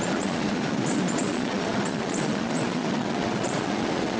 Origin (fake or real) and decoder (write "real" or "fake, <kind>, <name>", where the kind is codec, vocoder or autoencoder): fake, vocoder, Vocos